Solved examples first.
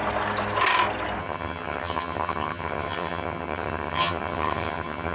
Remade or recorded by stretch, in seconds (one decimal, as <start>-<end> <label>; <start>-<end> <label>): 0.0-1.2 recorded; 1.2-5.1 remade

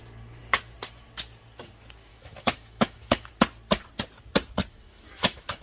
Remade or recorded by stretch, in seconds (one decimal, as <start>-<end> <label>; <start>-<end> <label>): 0.0-2.1 recorded; 2.1-3.3 remade; 3.3-4.7 recorded; 4.7-5.6 remade

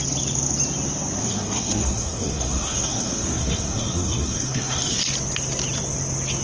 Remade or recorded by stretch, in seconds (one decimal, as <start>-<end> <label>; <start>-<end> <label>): 0.0-1.2 recorded; 1.2-5.0 remade; 5.0-6.4 recorded

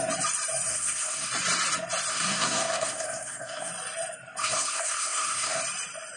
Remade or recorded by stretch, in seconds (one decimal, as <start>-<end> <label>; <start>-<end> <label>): 0.0-0.7 recorded; 0.7-1.3 remade; 1.3-2.1 recorded; 2.1-3.7 remade; 3.7-4.4 recorded; 4.4-5.6 remade; 5.6-6.2 recorded

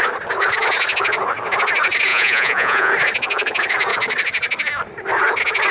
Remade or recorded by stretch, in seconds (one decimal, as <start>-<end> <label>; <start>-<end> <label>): 0.0-2.1 recorded; 2.1-2.9 remade; 2.9-5.7 recorded

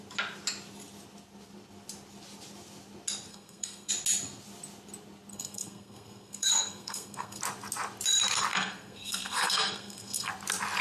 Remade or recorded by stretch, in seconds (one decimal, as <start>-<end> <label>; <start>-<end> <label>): 0.0-3.3 recorded; 3.3-3.9 remade; 3.9-5.3 recorded; 5.3-7.4 remade; 7.4-8.5 recorded; 8.5-10.3 remade; 10.3-10.8 recorded

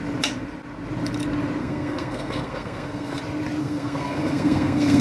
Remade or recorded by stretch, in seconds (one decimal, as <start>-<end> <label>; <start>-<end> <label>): 0.0-1.6 recorded; 1.6-3.2 remade; 3.2-3.6 recorded; 3.6-5.0 remade